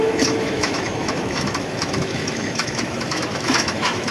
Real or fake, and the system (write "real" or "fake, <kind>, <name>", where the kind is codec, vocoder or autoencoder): fake, autoencoder, DAC-VAE